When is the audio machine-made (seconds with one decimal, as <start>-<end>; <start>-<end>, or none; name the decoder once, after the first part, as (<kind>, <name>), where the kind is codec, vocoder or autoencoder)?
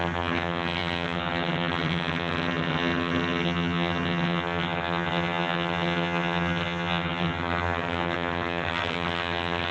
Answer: 0.0-9.7 (vocoder, HiFi-GAN)